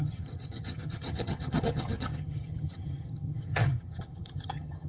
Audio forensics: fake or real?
fake